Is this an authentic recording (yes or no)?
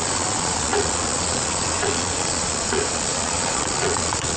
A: no